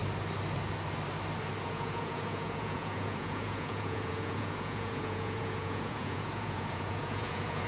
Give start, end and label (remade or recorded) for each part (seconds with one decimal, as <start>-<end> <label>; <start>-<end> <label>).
0.0-1.6 recorded; 1.6-7.7 remade